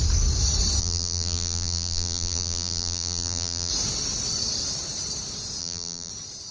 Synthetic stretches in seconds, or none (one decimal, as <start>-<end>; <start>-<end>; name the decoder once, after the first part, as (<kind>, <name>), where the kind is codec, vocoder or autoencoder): 0.8-3.7 (vocoder, BigVGAN v2); 5.6-6.1